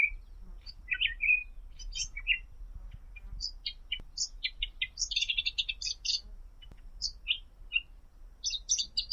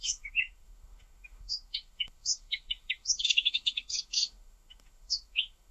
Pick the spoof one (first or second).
second